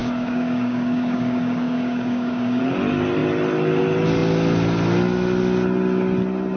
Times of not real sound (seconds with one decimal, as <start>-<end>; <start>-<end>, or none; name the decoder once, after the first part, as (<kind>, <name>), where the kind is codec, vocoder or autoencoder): 0.0-2.6 (codec, DAC)